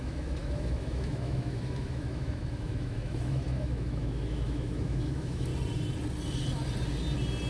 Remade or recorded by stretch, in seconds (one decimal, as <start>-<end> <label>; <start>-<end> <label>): 0.0-5.5 remade; 5.5-7.5 recorded